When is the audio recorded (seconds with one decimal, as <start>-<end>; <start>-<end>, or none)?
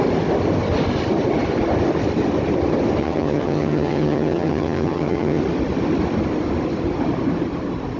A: 0.0-3.0; 5.4-8.0